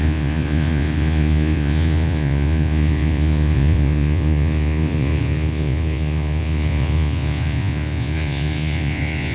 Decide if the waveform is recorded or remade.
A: remade